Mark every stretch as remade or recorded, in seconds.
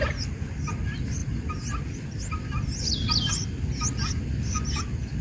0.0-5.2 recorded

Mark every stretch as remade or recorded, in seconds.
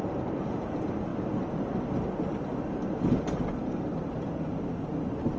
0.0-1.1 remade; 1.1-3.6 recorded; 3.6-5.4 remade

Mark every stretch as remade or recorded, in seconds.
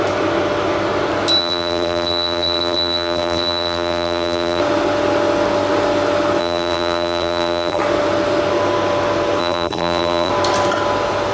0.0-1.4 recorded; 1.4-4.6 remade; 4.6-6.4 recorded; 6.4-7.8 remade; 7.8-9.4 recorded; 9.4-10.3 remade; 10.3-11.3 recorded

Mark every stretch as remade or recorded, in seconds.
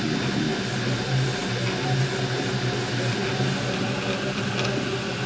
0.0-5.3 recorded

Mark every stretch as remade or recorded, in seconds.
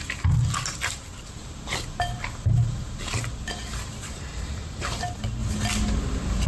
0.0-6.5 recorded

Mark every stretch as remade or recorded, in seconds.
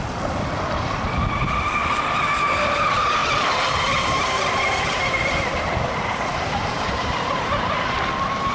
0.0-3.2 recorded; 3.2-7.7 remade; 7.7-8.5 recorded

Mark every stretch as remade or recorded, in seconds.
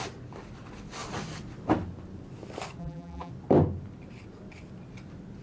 0.0-2.8 recorded; 2.8-3.3 remade; 3.3-5.4 recorded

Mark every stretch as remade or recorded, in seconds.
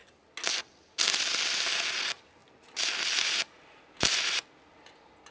0.0-0.6 recorded; 0.6-2.4 remade; 2.4-5.3 recorded